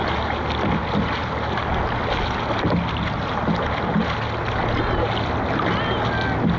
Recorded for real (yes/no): yes